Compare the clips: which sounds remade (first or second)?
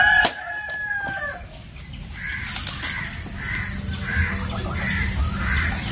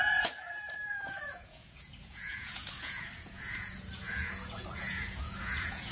second